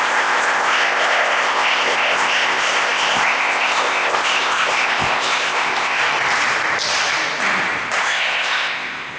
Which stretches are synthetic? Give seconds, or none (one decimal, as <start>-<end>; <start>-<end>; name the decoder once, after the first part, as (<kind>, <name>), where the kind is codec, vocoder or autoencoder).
0.0-6.0 (codec, ZipCodec); 8.0-9.2

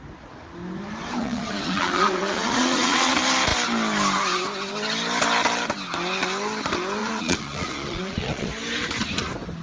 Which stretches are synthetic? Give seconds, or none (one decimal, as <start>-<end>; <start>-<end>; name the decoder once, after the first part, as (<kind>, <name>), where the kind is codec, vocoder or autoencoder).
1.2-3.1 (vocoder, Vocos); 7.0-8.5

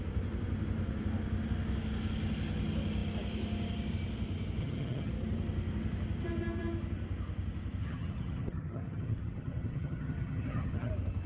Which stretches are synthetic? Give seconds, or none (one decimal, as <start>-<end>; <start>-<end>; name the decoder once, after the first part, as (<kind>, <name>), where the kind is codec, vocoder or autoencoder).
4.6-5.1 (vocoder, HiFi-GAN); 7.8-10.9

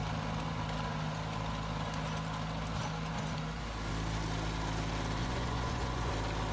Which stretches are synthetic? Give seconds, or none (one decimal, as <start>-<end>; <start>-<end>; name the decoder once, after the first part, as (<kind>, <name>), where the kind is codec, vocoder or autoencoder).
5.2-6.1 (vocoder, Vocos)

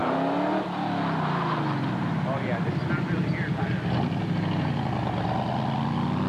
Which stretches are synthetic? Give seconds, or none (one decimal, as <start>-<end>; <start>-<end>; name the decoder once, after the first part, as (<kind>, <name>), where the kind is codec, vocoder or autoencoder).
none